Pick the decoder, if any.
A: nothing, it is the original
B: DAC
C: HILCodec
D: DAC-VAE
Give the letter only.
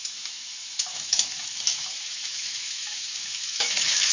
D